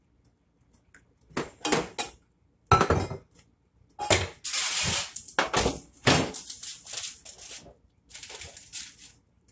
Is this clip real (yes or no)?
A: yes